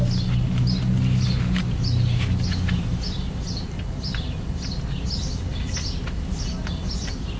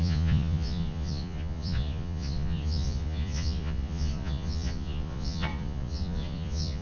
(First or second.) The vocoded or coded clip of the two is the second